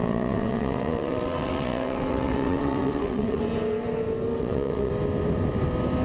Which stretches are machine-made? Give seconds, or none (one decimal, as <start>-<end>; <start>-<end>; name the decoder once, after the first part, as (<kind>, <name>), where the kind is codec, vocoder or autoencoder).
0.0-3.4 (vocoder, WaveNeXt); 4.4-4.9